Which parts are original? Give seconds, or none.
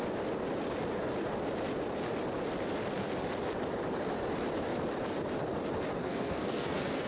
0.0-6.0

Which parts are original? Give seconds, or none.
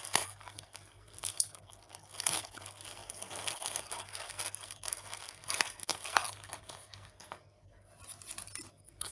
7.9-8.7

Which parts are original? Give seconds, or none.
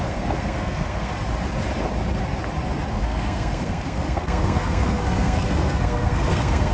1.1-2.9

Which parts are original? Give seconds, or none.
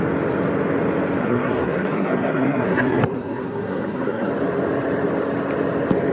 0.0-1.2; 4.3-6.1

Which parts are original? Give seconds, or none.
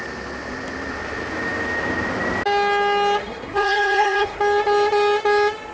0.0-3.2; 4.4-5.7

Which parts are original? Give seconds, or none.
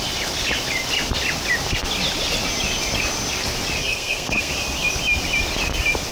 0.0-3.8; 4.5-6.1